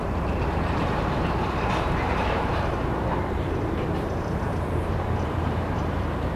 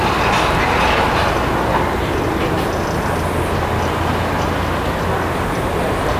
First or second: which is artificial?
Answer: first